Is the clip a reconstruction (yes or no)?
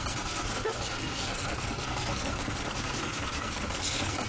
yes